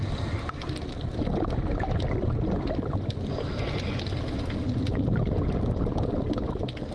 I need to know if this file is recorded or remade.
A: recorded